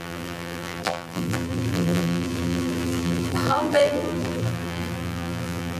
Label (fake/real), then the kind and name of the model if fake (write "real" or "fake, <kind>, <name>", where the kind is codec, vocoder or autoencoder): fake, vocoder, BigVGAN v2